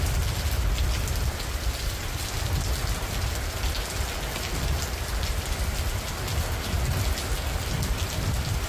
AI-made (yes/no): no